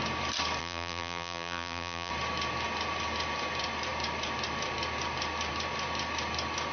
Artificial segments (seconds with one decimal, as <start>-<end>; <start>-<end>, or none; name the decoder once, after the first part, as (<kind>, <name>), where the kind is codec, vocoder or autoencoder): 0.6-2.1 (vocoder, BigVGAN v2)